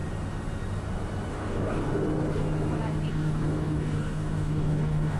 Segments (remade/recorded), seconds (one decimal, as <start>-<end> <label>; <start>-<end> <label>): 0.0-1.3 recorded; 1.3-1.8 remade; 1.8-3.1 recorded; 3.1-5.2 remade